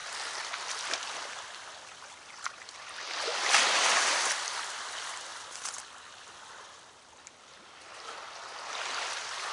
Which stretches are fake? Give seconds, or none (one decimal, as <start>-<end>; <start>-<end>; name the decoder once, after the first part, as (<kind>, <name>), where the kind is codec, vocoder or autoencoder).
none